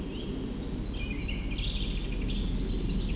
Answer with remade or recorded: recorded